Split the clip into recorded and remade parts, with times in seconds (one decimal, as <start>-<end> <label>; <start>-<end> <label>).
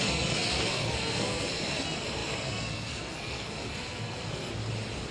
0.0-4.5 remade; 4.5-5.1 recorded